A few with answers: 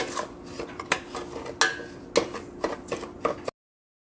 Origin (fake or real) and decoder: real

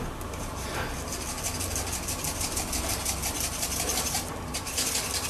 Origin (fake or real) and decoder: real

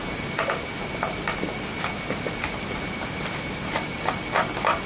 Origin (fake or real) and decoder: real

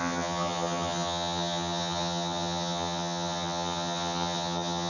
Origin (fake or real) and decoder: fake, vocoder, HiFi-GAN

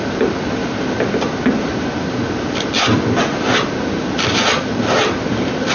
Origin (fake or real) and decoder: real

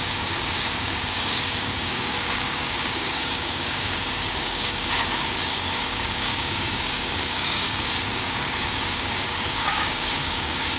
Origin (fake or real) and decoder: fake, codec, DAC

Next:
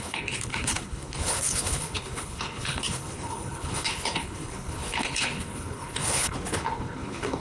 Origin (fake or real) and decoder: fake, codec, HILCodec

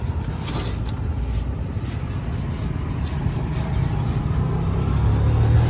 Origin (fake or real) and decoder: real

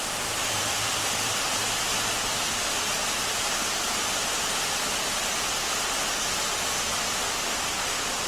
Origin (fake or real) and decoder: fake, vocoder, BigVGAN v2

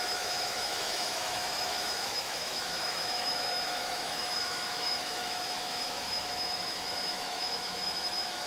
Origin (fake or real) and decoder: fake, autoencoder, DAC-VAE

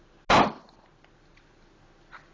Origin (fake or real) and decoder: real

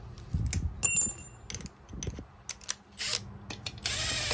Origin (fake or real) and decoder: real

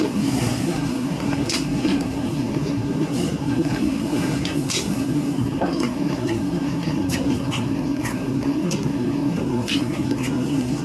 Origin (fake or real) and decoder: fake, codec, SNAC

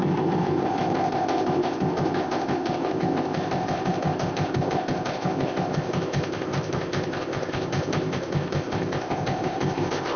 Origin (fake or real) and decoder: fake, codec, ZipCodec